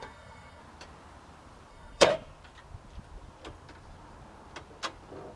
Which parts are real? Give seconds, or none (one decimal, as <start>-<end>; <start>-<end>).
0.6-1.7; 2.1-5.4